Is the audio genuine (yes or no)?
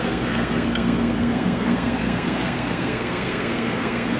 no